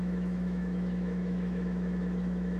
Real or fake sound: fake